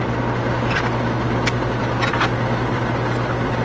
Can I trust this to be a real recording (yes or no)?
yes